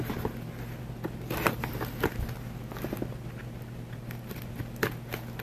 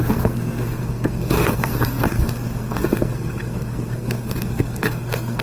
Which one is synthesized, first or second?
second